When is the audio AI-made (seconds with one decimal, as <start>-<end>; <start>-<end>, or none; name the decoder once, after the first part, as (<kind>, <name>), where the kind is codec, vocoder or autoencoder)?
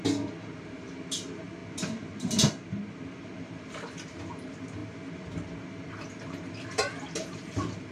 none